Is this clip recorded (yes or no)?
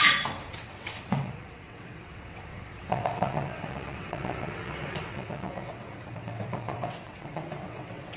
no